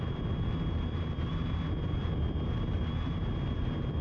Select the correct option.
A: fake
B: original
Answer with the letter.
B